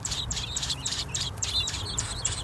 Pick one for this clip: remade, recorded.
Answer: remade